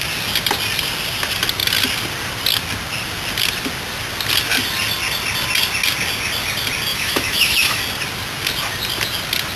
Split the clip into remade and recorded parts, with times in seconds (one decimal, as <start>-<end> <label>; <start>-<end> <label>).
0.0-6.9 recorded; 6.9-7.8 remade; 7.8-9.6 recorded